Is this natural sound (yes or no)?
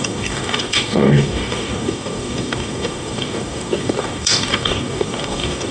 no